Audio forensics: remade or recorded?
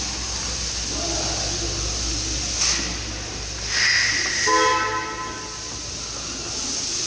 recorded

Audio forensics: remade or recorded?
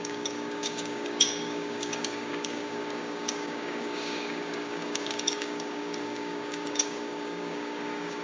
remade